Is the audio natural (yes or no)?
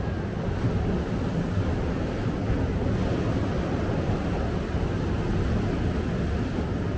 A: yes